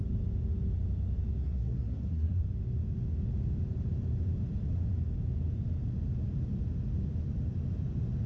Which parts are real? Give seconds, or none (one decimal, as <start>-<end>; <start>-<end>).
0.0-1.4; 2.4-8.3